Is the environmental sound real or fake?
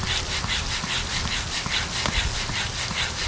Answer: real